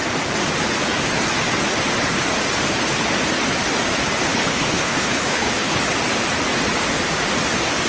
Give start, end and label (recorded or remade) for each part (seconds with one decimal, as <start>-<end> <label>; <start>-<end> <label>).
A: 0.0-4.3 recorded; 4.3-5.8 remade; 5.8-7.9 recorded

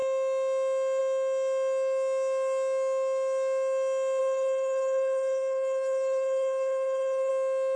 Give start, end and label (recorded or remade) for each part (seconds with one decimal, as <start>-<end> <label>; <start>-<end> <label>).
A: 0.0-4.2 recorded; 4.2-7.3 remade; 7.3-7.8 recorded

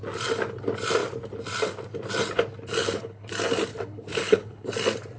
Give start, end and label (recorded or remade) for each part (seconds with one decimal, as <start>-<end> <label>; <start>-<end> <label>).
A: 0.0-2.8 recorded; 2.8-3.3 remade; 3.3-3.7 recorded; 3.7-4.7 remade; 4.7-5.2 recorded